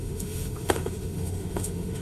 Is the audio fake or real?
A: fake